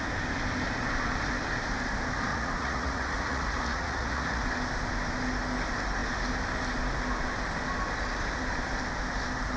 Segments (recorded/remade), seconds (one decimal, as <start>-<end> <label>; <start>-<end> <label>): 0.0-2.3 recorded; 2.3-4.4 remade; 4.4-9.6 recorded